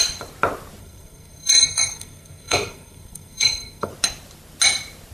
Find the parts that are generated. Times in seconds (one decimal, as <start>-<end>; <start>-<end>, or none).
0.8-3.9